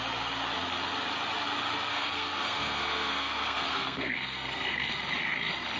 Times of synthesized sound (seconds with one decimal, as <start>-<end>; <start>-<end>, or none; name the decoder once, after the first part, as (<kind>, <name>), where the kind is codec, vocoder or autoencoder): 1.9-4.9 (codec, SNAC)